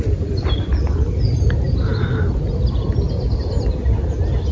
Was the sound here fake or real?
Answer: real